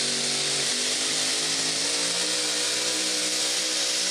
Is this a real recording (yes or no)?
yes